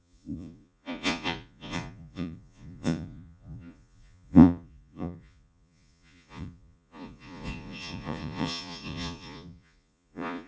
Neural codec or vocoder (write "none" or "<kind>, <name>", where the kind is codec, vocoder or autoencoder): vocoder, Vocos